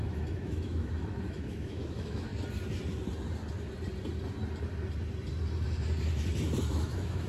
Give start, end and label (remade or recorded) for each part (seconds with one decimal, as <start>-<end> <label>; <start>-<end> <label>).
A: 0.0-2.3 remade; 2.3-6.6 recorded; 6.6-7.3 remade

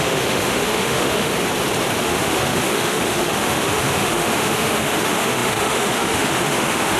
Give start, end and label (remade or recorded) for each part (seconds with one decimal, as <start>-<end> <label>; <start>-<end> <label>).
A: 0.0-1.3 remade; 1.3-2.0 recorded; 2.0-7.0 remade